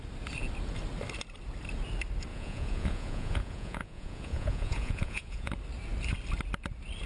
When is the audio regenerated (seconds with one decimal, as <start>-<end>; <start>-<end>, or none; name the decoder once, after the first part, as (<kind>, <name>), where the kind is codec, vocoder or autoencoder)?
2.3-5.5 (vocoder, Vocos)